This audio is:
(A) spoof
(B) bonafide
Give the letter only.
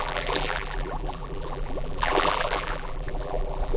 A